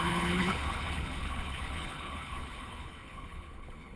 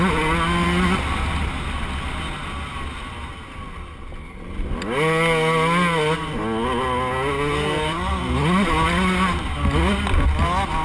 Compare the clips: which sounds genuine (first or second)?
second